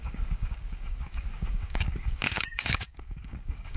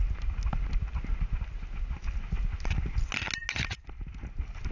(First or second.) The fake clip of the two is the first